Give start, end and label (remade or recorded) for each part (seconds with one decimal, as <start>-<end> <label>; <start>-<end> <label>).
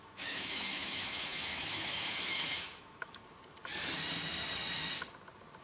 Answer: 0.0-3.2 remade; 3.2-5.6 recorded